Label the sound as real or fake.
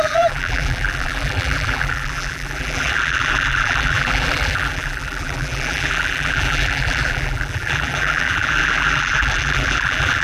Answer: fake